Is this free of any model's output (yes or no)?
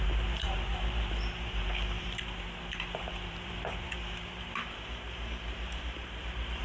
no